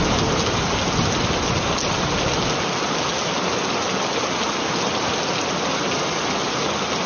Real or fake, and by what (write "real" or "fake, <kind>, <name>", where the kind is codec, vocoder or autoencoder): real